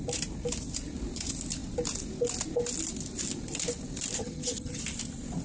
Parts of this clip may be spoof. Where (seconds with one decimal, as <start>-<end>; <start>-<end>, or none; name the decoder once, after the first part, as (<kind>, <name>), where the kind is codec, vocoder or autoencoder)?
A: 4.2-4.8 (vocoder, HiFi-GAN)